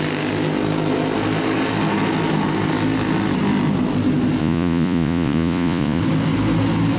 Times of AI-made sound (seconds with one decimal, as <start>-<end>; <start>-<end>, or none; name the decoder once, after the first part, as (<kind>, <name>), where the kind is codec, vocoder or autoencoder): 4.4-6.0 (vocoder, Vocos)